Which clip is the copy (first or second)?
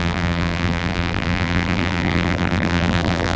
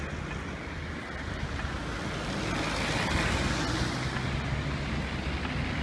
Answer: first